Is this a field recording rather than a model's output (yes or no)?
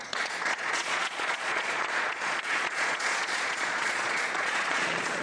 no